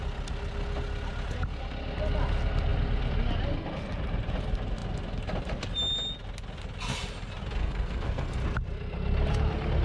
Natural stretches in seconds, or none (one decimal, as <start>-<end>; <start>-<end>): 0.0-7.6; 8.4-9.8